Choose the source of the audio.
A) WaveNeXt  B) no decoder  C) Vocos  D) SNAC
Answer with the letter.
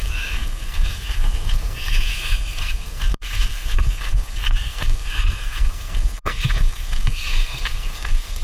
D